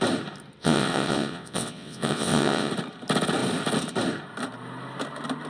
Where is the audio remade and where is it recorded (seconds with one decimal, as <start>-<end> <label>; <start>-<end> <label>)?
0.0-0.6 recorded; 0.6-2.7 remade; 2.7-5.5 recorded